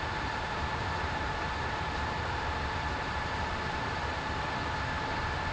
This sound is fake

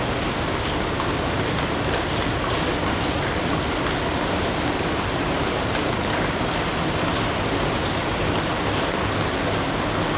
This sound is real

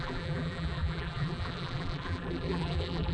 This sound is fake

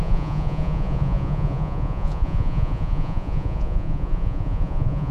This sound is fake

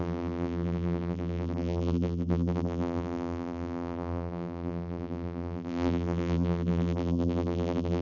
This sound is fake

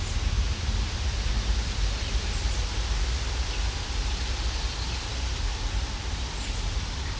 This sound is real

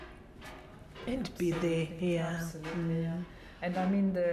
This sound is real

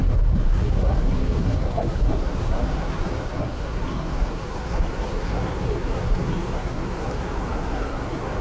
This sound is fake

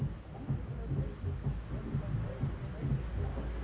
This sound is real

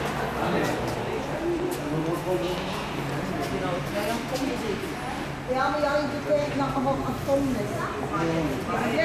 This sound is real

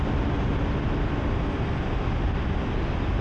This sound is real